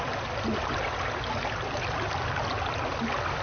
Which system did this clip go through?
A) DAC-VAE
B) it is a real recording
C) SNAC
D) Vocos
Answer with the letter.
B